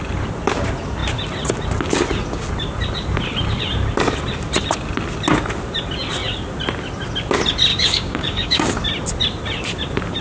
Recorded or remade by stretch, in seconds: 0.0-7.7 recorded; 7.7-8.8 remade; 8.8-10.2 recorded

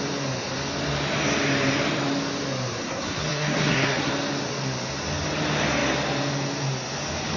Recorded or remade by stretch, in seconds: 0.0-2.8 recorded; 2.8-4.1 remade; 4.1-7.4 recorded

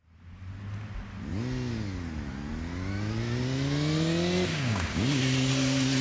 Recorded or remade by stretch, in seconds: 0.0-4.5 recorded; 4.5-5.2 remade; 5.2-6.0 recorded

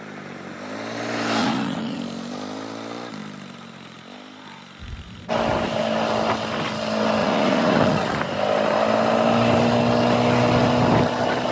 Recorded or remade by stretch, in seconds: 0.0-1.4 recorded; 1.4-2.0 remade; 2.0-7.2 recorded; 7.2-8.2 remade; 8.2-11.5 recorded

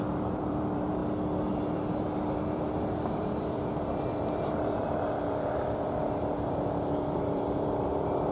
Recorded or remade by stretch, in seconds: 0.0-1.0 remade; 1.0-1.5 recorded; 1.5-8.3 remade

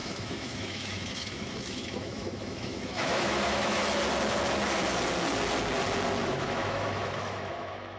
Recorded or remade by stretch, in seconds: 0.0-3.8 remade; 3.8-6.2 recorded; 6.2-8.0 remade

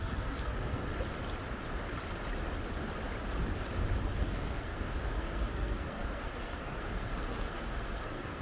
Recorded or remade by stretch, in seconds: 0.0-0.8 remade; 0.8-4.0 recorded; 4.0-8.4 remade

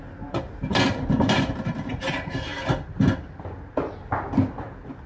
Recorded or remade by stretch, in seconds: 0.0-2.5 remade; 2.5-5.1 recorded